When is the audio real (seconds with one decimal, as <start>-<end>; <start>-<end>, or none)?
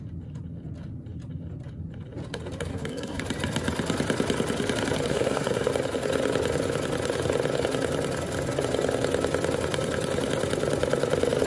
0.0-2.7; 3.2-5.1; 5.7-11.5